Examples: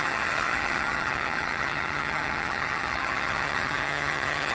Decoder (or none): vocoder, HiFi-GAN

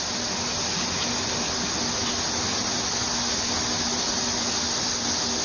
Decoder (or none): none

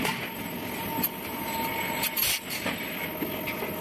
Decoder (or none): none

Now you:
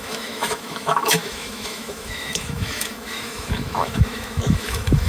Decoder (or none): autoencoder, DAC-VAE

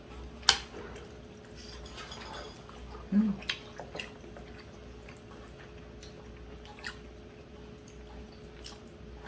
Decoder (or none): none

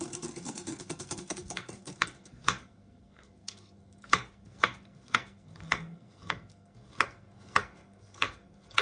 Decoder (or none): codec, SNAC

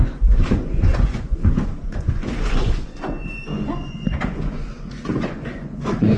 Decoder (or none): vocoder, Vocos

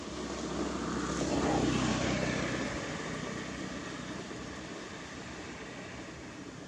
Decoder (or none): none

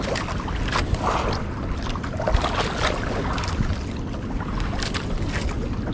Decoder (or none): none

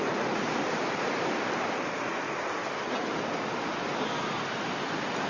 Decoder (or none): none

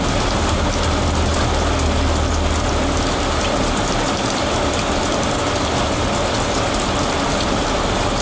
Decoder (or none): none